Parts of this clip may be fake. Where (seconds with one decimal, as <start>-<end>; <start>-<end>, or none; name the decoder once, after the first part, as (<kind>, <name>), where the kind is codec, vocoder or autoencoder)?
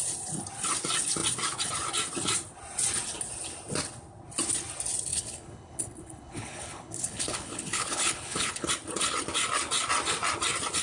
5.1-8.7 (codec, HILCodec)